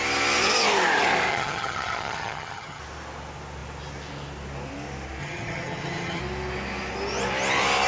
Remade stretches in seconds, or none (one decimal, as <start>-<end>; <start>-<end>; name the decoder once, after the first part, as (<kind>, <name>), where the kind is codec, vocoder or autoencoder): 1.3-2.8 (vocoder, HiFi-GAN); 5.2-6.2